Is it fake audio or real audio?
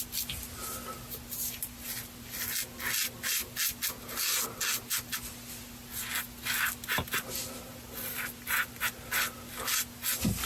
real